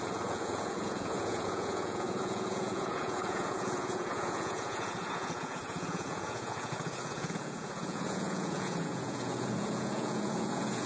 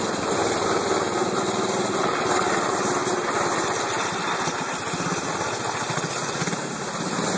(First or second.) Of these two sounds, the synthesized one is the first